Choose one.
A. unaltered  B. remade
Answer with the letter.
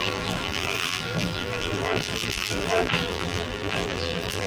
B